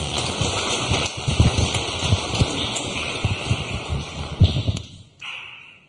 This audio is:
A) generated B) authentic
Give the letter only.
A